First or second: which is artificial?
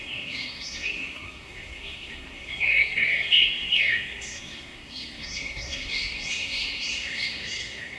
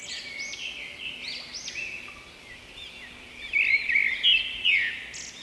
first